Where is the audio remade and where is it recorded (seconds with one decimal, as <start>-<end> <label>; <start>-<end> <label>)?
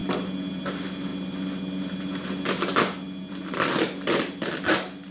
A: 0.0-5.1 recorded